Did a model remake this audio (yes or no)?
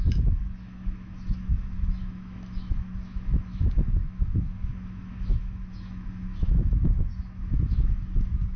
yes